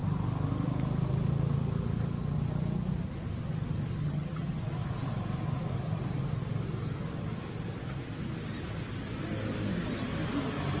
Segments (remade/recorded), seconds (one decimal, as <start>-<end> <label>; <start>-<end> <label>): 0.0-4.0 recorded; 4.0-4.6 remade; 4.6-10.8 recorded